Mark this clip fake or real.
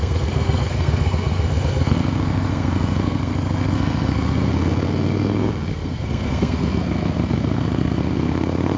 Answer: fake